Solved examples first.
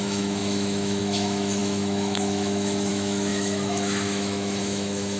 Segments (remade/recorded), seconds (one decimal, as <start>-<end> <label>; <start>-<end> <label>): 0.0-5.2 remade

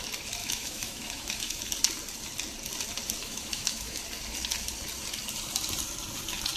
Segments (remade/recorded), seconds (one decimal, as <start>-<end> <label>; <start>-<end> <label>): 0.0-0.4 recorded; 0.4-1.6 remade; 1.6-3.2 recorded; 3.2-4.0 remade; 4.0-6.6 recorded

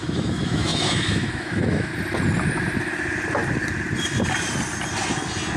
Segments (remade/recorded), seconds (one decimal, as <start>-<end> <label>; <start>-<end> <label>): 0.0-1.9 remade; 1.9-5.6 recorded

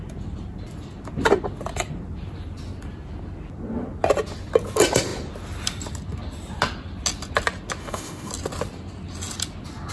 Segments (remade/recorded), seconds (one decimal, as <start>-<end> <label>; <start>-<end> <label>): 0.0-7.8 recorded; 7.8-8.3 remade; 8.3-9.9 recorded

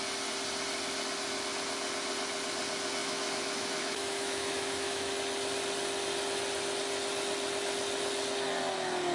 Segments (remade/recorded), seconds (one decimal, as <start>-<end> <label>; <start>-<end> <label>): 0.0-3.0 recorded; 3.0-5.1 remade; 5.1-9.1 recorded